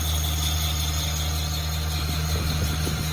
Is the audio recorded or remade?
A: recorded